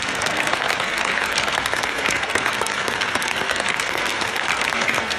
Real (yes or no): no